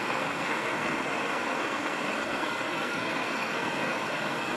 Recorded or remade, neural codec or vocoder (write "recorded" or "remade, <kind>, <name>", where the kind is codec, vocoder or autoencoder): remade, codec, SNAC